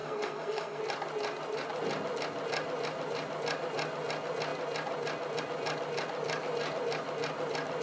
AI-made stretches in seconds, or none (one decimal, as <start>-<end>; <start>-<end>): 0.0-0.8